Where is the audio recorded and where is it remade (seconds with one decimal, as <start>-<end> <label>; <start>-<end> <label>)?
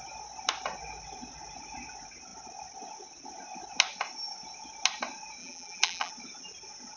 0.0-5.4 recorded; 5.4-6.1 remade; 6.1-7.0 recorded